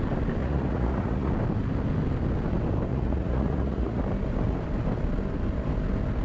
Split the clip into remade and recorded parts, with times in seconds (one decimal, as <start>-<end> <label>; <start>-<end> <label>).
0.0-0.4 recorded; 0.4-1.3 remade; 1.3-2.9 recorded; 2.9-4.0 remade; 4.0-6.2 recorded